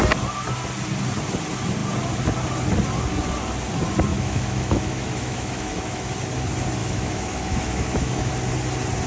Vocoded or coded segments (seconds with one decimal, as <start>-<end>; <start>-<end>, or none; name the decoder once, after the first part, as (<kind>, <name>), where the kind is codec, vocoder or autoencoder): 4.1-6.1 (autoencoder, DAC-VAE); 6.8-8.3